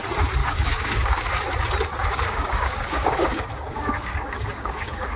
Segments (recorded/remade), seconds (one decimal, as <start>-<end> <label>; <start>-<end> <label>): 0.0-0.4 recorded; 0.4-1.4 remade; 1.4-2.0 recorded; 2.0-5.2 remade